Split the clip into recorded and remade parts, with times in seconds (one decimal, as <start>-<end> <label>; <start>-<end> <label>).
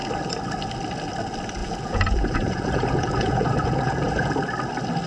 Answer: 0.0-1.6 recorded; 1.6-4.3 remade; 4.3-5.1 recorded